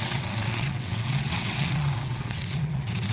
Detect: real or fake fake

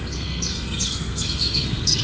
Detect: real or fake fake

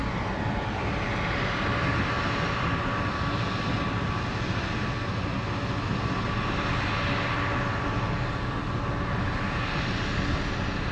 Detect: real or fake real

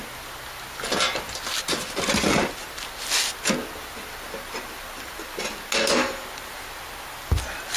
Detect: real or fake real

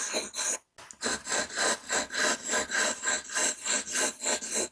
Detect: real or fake real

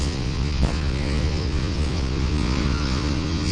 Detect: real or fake fake